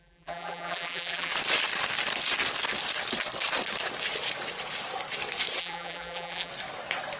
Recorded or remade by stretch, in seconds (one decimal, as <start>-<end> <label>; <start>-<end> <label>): 0.0-1.3 remade; 1.3-5.6 recorded; 5.6-6.5 remade; 6.5-7.2 recorded